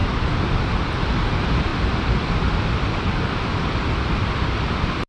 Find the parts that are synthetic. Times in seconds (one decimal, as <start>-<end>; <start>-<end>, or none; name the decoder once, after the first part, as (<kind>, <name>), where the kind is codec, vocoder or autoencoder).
0.0-1.0 (vocoder, BigVGAN v2); 1.7-5.1